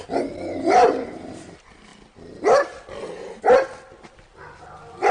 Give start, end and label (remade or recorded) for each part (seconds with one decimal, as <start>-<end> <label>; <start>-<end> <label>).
0.0-5.1 recorded